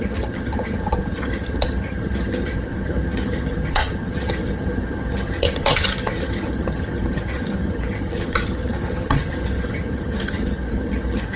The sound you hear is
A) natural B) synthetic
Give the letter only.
B